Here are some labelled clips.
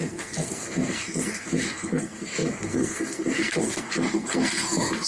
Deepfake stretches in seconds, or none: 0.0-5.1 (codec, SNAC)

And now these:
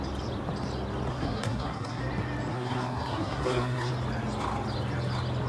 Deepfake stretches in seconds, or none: 1.1-2.0 (codec, SNAC); 2.5-3.9

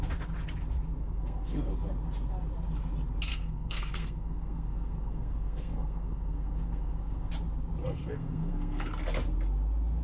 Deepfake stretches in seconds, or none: 1.0-1.7 (codec, SNAC); 3.3-7.3; 7.8-8.9